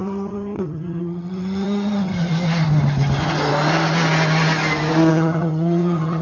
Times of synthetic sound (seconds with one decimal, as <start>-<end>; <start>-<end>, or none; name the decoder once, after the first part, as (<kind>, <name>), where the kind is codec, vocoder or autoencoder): 0.0-2.1 (vocoder, HiFi-GAN); 5.1-6.2